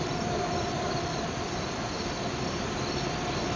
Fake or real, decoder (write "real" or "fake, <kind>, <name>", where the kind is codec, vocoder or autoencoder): real